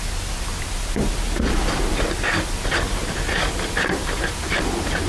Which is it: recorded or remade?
recorded